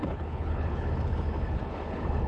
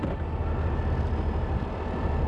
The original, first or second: second